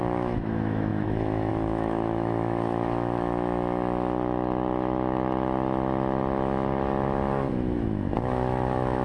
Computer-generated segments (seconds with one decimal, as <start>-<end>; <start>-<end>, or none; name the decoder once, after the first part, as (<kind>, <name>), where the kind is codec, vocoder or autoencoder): 0.0-9.0 (autoencoder, DAC-VAE)